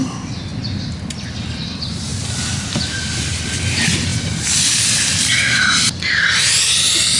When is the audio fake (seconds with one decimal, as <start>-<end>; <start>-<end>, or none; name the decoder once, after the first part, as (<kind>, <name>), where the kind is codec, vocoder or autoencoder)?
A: none